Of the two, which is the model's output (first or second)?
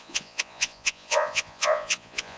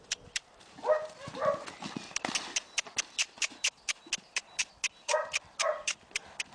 first